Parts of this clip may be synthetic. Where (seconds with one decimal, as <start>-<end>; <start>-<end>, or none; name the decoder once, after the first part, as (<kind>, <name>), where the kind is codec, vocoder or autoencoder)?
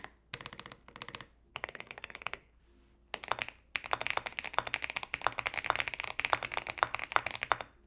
1.5-2.6 (codec, SNAC)